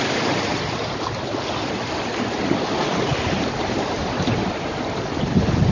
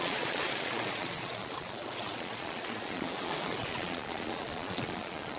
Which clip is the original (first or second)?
first